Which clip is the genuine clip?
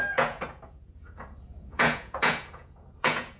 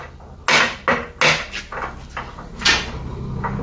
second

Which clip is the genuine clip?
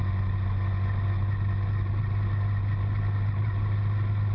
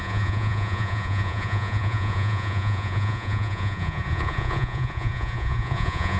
first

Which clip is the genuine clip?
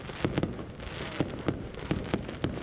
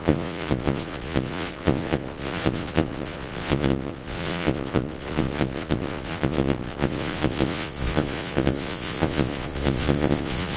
first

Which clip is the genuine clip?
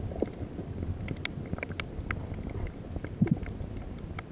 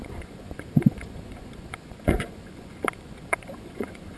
first